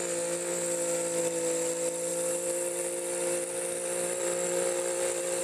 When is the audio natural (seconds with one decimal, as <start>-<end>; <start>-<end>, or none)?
0.0-2.1